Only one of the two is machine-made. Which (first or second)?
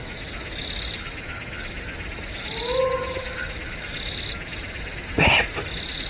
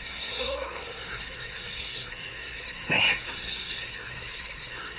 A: second